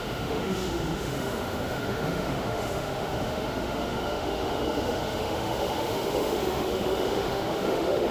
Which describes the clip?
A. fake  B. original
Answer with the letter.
A